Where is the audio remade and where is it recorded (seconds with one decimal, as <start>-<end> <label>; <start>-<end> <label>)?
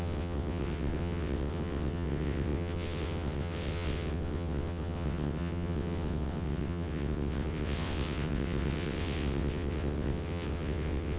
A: 0.0-11.2 remade